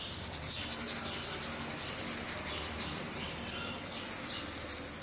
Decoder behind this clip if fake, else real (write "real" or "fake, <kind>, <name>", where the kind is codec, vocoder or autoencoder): real